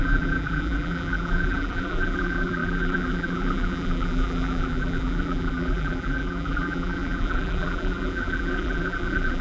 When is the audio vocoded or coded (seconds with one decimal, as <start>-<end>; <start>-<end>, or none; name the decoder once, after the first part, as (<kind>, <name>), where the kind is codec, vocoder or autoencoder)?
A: 0.0-9.4 (vocoder, BigVGAN v2)